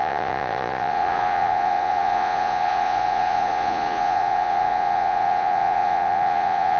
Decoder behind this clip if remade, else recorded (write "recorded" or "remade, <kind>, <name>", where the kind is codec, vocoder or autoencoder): remade, vocoder, Vocos